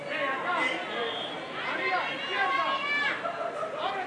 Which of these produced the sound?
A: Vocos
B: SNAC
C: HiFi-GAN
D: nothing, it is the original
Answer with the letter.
D